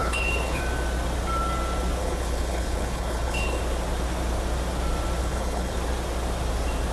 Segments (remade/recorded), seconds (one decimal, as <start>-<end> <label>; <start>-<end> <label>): 0.0-0.6 remade; 0.6-2.0 recorded; 2.0-3.6 remade; 3.6-5.2 recorded; 5.2-5.8 remade; 5.8-6.9 recorded